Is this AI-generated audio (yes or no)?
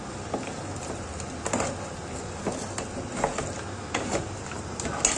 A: no